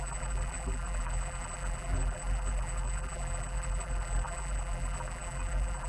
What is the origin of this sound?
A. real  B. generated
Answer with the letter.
B